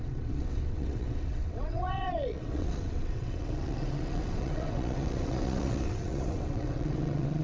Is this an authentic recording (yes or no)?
no